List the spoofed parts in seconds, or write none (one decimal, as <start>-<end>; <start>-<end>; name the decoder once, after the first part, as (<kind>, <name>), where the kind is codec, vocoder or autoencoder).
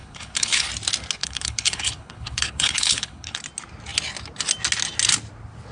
0.0-0.7 (codec, HILCodec); 1.2-3.4